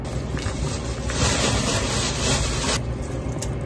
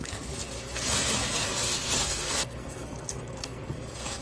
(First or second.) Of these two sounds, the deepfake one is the second